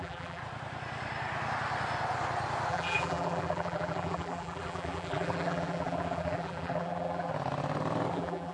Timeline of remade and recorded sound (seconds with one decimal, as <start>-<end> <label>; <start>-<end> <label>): 0.0-0.4 remade; 0.4-2.7 recorded; 2.7-7.3 remade; 7.3-8.1 recorded; 8.1-8.5 remade

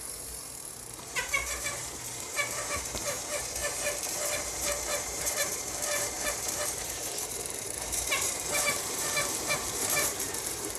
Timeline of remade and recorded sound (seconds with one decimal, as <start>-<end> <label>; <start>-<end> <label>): 0.0-10.8 remade

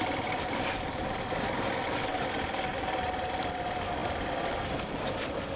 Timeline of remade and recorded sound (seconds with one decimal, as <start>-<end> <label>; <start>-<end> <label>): 0.0-5.6 recorded

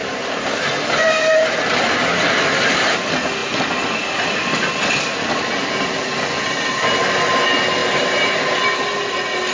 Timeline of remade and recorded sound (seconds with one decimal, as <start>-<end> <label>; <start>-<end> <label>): 0.0-1.5 remade; 1.5-7.8 recorded; 7.8-8.4 remade; 8.4-9.5 recorded

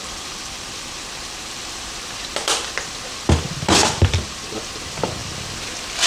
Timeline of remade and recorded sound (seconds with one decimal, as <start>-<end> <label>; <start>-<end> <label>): 0.0-6.1 remade

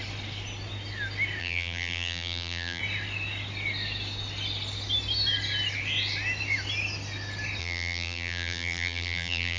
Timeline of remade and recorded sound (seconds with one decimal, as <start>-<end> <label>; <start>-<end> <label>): 0.0-1.4 recorded; 1.4-2.8 remade; 2.8-7.6 recorded; 7.6-9.6 remade

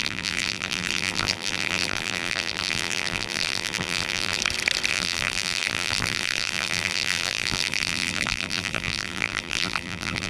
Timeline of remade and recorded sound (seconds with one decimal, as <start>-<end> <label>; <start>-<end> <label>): 0.0-4.4 remade; 4.4-4.9 recorded; 4.9-10.3 remade

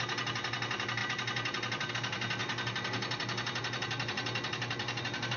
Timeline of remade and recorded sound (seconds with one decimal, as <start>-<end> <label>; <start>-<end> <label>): 0.0-5.4 recorded